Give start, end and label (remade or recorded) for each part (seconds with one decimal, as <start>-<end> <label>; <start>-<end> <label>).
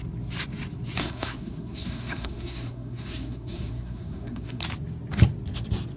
0.0-1.0 recorded; 1.0-4.6 remade; 4.6-6.0 recorded